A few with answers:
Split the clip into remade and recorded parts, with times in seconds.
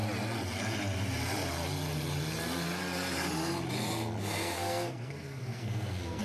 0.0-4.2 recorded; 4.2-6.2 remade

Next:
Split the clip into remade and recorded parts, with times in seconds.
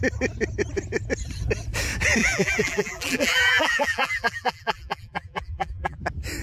0.0-2.2 recorded; 2.2-6.0 remade; 6.0-6.4 recorded